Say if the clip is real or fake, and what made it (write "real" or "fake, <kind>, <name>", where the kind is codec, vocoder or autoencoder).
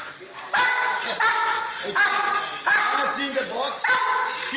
real